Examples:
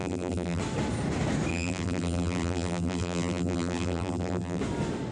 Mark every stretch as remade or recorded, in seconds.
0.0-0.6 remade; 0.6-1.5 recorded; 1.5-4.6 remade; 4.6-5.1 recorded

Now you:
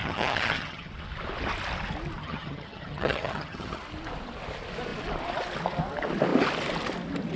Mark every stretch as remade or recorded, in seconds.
0.0-0.9 remade; 0.9-2.2 recorded; 2.2-3.8 remade; 3.8-7.4 recorded

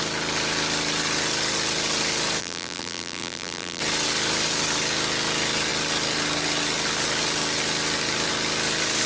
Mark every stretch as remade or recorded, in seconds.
0.0-2.4 recorded; 2.4-3.8 remade; 3.8-9.1 recorded

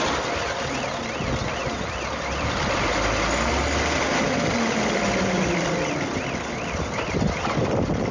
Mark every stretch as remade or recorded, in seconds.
0.0-8.1 recorded